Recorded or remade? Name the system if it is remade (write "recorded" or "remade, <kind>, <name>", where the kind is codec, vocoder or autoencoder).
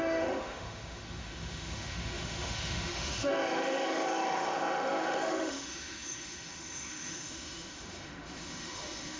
remade, autoencoder, DAC-VAE